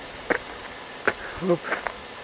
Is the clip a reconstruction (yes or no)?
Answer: no